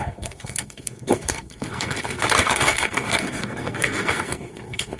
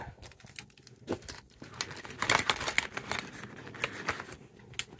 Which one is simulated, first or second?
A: first